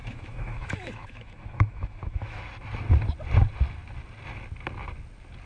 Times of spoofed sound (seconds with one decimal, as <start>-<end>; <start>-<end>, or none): 0.0-2.4